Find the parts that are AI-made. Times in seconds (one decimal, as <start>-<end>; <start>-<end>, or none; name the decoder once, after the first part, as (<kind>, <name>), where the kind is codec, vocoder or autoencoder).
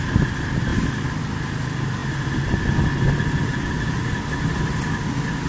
none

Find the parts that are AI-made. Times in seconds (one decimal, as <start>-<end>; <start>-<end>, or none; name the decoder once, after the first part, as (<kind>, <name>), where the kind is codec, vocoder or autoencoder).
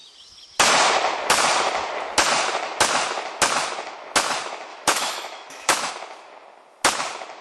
4.7-5.9 (autoencoder, DAC-VAE)